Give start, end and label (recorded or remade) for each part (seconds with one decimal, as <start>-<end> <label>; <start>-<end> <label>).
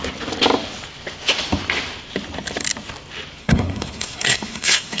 0.0-3.4 recorded; 3.4-5.0 remade